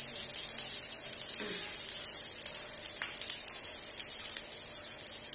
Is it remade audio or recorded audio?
recorded